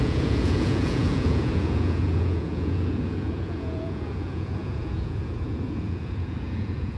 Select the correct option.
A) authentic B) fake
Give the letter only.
B